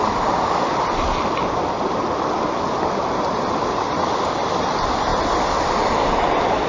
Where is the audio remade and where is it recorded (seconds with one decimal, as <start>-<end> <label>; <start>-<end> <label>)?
0.0-6.7 recorded